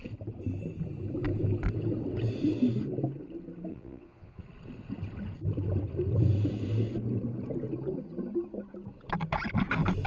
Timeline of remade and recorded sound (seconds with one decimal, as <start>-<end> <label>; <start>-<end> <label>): 0.0-3.7 recorded; 3.7-4.4 remade; 4.4-10.1 recorded